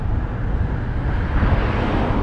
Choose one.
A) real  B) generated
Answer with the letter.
A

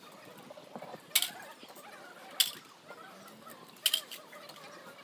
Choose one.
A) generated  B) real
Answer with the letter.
B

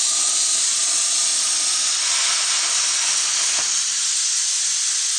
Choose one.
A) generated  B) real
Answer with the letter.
B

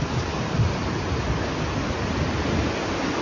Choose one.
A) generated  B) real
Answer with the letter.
B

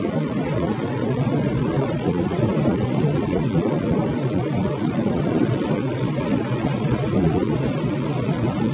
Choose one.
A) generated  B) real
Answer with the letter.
A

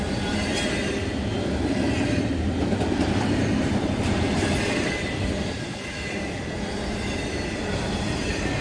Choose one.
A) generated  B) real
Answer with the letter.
B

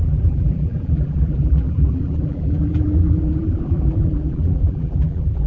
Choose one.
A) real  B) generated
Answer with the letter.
B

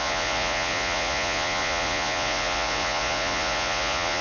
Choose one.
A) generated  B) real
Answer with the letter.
A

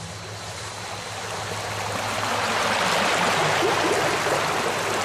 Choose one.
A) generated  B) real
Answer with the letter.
B